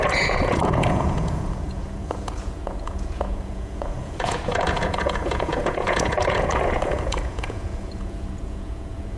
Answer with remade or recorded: remade